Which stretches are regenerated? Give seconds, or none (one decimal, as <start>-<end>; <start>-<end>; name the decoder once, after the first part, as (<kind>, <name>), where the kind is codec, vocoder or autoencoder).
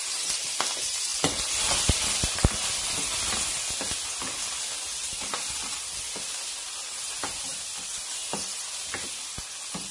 1.1-3.2 (vocoder, BigVGAN v2); 7.5-8.4